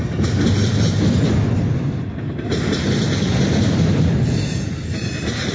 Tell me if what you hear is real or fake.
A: real